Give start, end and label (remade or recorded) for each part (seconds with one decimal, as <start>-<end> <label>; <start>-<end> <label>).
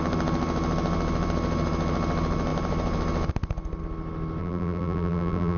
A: 0.0-4.4 recorded; 4.4-5.6 remade